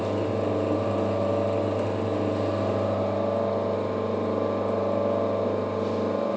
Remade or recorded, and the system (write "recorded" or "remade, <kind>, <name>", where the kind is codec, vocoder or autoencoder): recorded